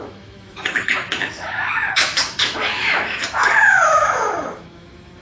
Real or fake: fake